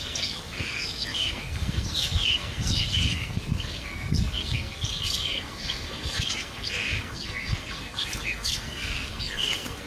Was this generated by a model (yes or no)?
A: yes